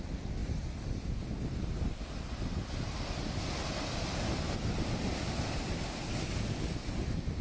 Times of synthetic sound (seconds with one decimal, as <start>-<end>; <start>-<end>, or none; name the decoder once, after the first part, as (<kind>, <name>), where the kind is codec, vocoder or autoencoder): none